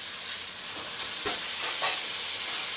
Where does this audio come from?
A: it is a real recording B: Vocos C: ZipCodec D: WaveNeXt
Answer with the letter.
A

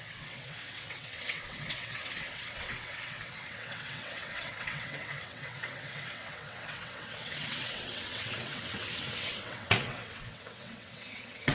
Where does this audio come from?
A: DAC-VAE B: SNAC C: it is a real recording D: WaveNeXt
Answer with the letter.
D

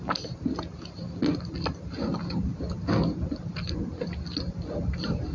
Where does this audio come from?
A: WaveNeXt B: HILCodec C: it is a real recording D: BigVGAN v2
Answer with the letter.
C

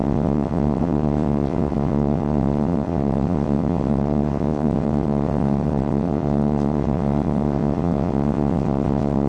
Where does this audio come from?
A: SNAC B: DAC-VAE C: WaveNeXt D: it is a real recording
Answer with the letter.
C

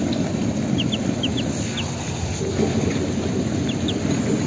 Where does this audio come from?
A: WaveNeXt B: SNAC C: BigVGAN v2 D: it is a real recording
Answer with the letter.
D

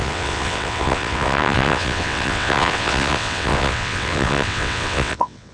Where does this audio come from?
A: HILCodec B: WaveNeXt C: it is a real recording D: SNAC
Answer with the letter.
B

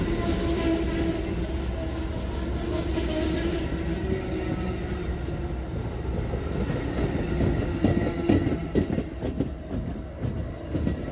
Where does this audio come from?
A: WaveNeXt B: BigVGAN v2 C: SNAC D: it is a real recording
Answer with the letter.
D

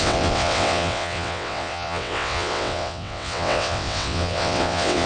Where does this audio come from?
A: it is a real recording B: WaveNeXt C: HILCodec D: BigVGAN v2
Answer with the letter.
B